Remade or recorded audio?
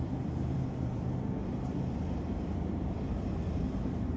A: remade